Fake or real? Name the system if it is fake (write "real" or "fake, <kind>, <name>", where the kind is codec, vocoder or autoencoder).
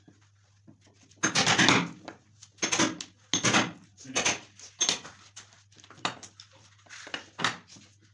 real